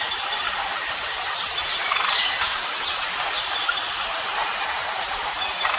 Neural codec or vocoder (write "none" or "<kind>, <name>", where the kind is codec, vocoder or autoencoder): none